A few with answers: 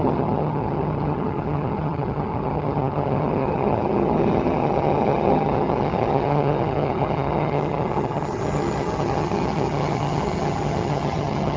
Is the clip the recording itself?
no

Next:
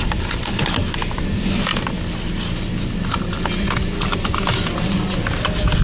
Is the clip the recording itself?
yes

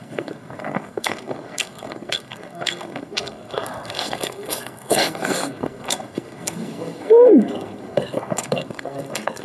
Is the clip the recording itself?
no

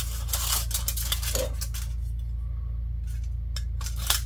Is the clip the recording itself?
yes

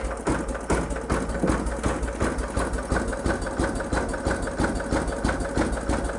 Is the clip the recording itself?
yes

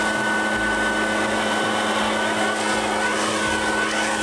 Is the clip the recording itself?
yes